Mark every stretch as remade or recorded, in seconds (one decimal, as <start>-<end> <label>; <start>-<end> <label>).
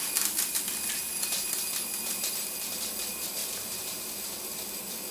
0.0-3.4 recorded; 3.4-4.1 remade; 4.1-5.1 recorded